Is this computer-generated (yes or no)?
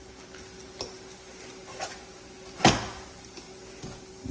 no